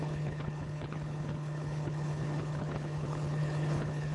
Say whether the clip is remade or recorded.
remade